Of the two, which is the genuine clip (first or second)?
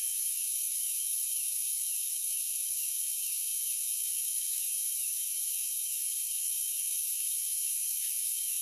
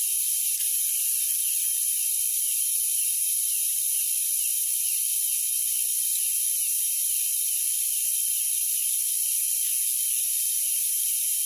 second